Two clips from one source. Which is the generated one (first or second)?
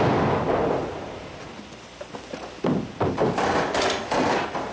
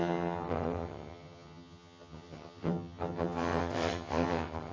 second